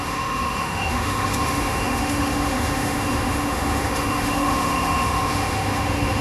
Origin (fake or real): fake